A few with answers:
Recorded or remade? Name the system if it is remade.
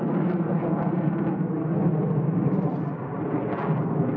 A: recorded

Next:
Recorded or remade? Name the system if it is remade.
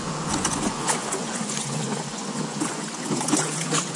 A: remade, vocoder, Vocos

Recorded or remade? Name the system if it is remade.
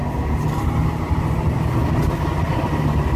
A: recorded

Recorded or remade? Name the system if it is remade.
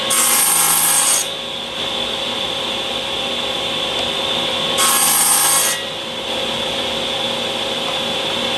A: recorded